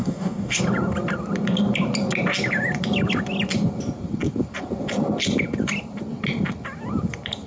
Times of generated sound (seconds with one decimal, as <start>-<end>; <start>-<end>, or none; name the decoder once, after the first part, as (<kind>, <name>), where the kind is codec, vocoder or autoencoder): 0.0-0.6 (codec, DAC)